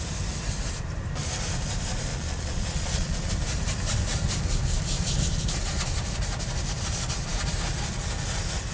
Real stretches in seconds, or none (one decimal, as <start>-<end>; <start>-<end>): 0.0-2.1; 3.3-8.7